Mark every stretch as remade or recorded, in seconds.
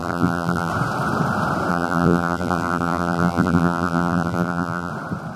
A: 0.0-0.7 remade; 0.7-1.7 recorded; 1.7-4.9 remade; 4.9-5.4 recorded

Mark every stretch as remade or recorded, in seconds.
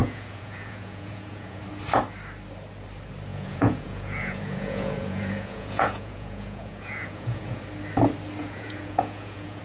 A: 0.0-1.6 remade; 1.6-3.3 recorded; 3.3-7.6 remade; 7.6-8.4 recorded; 8.4-9.6 remade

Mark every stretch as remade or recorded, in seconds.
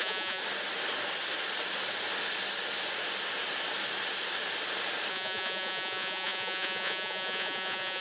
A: 0.0-0.4 remade; 0.4-5.1 recorded; 5.1-8.0 remade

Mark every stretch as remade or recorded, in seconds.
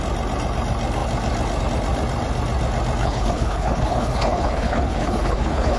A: 0.0-3.0 recorded; 3.0-5.8 remade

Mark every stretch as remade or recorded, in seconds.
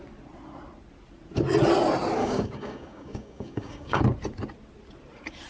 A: 0.0-2.2 recorded; 2.2-4.0 remade; 4.0-5.5 recorded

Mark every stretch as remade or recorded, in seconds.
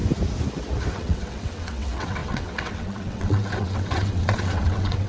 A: 0.0-0.9 recorded; 0.9-5.1 remade